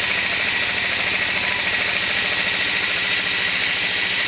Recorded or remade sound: recorded